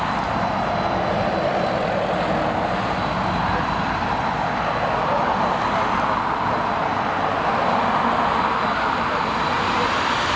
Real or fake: real